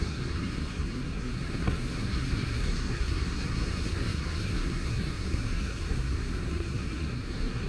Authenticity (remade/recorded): remade